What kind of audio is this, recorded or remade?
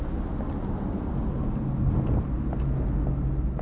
recorded